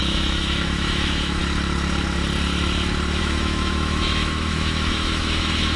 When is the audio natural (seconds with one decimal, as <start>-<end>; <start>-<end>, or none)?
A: 1.4-3.2